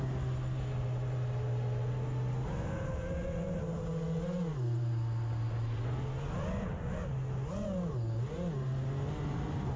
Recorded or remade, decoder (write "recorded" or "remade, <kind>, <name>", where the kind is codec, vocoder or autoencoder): recorded